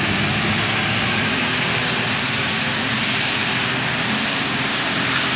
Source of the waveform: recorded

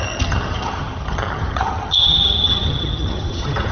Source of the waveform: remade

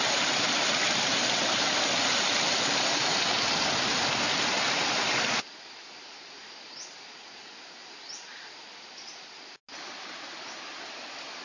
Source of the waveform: recorded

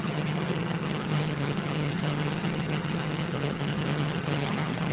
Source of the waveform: remade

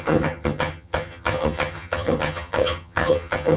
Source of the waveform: remade